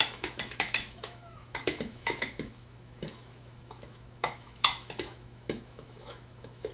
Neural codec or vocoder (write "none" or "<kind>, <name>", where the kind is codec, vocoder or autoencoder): autoencoder, DAC-VAE